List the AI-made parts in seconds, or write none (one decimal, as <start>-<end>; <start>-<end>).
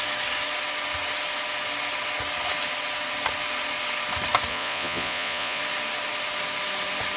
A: 4.5-5.6